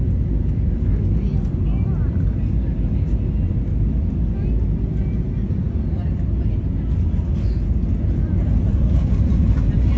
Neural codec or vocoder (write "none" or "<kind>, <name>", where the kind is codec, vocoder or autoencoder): none